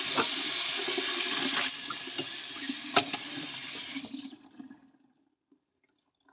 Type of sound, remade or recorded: recorded